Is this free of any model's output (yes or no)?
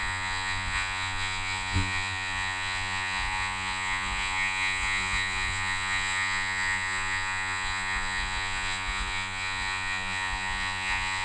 no